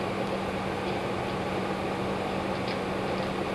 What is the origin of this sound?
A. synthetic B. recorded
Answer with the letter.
B